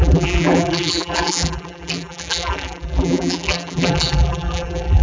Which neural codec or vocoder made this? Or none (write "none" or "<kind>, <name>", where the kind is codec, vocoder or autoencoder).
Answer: vocoder, BigVGAN v2